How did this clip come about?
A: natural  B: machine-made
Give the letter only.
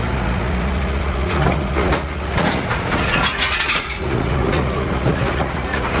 B